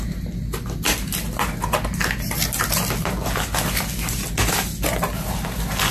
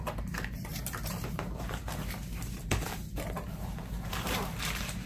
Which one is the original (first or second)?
first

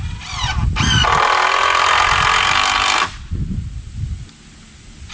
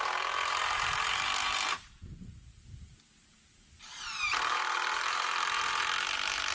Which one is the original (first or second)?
first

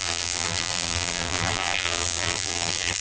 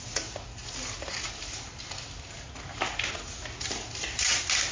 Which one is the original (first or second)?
second